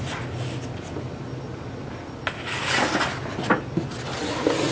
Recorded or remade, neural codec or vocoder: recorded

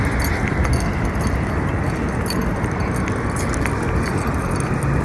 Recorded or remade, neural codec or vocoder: recorded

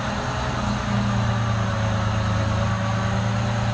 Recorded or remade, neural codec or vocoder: recorded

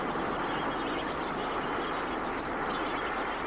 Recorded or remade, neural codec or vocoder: recorded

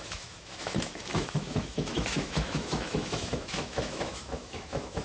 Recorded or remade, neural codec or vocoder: remade, autoencoder, DAC-VAE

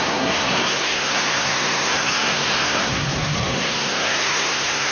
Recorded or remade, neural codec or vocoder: remade, codec, SNAC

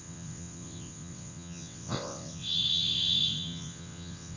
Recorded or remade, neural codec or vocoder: remade, vocoder, WaveNeXt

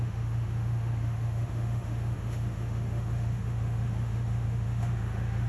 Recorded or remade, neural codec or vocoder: remade, autoencoder, DAC-VAE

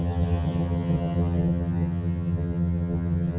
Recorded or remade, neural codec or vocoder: remade, vocoder, HiFi-GAN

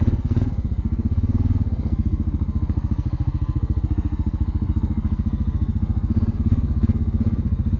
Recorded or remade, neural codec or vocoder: remade, codec, SNAC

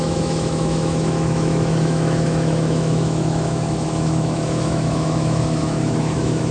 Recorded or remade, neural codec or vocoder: remade, autoencoder, DAC-VAE